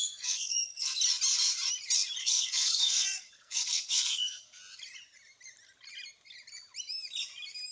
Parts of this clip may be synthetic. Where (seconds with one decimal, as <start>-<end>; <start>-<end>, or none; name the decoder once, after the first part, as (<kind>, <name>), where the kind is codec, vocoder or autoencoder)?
0.0-1.0 (codec, SNAC); 2.2-4.6